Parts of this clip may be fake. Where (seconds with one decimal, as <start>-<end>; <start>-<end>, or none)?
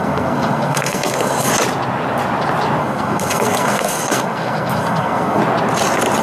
0.0-1.5; 2.8-5.4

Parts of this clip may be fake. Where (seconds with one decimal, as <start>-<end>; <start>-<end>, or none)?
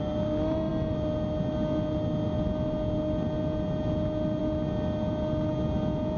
none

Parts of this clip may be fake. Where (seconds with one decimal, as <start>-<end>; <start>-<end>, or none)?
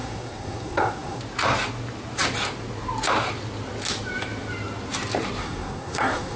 0.0-1.2; 5.4-6.4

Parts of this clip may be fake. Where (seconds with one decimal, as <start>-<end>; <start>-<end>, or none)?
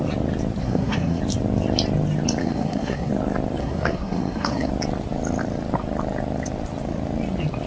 0.6-1.2; 2.4-3.1; 3.6-4.7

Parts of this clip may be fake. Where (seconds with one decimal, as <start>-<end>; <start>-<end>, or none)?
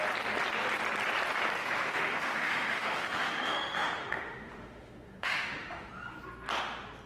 1.6-5.9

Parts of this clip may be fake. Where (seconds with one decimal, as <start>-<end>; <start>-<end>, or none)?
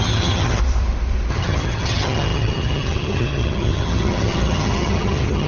0.0-0.6; 1.3-5.5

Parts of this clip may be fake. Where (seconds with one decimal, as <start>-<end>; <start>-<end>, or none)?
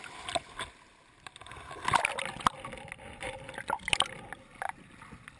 none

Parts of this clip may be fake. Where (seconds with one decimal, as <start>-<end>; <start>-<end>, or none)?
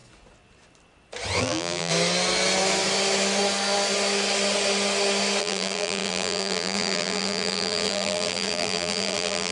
1.4-1.9; 5.4-9.5